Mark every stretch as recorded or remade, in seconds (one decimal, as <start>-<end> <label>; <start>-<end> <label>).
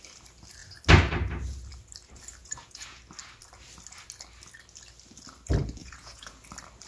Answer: 0.0-2.4 recorded; 2.4-3.0 remade; 3.0-5.8 recorded; 5.8-6.4 remade; 6.4-6.9 recorded